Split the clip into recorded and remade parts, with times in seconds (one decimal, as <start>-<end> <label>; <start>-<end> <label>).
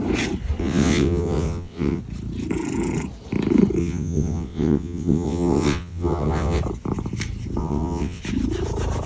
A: 0.0-0.6 recorded; 0.6-2.0 remade; 2.0-3.8 recorded; 3.8-6.6 remade; 6.6-7.6 recorded; 7.6-8.2 remade; 8.2-9.1 recorded